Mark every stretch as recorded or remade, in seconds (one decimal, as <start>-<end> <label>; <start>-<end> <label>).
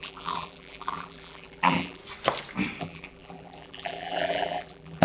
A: 0.0-2.0 remade; 2.0-2.8 recorded; 2.8-5.0 remade